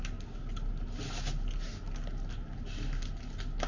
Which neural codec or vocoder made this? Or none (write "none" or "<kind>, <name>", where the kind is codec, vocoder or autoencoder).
none